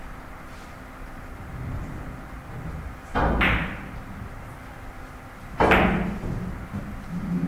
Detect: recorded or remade recorded